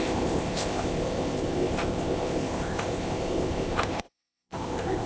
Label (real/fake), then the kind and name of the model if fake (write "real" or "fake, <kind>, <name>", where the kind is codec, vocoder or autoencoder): fake, codec, ZipCodec